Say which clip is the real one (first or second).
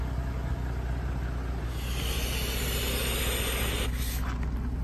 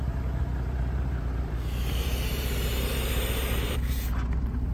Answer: first